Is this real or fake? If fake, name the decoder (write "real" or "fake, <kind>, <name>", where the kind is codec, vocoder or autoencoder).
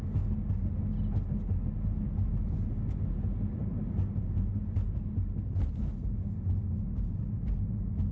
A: real